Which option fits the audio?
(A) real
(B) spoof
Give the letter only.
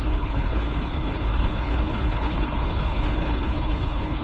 B